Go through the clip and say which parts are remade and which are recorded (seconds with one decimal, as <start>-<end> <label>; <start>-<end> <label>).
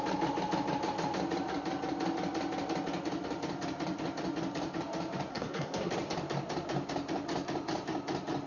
0.0-5.3 recorded; 5.3-5.9 remade; 5.9-8.5 recorded